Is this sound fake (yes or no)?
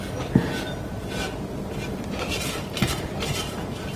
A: no